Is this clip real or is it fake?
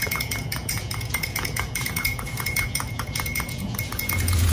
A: fake